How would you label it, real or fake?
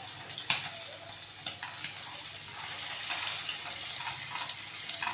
real